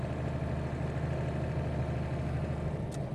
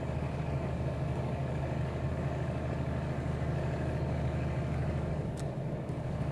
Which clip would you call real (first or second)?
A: first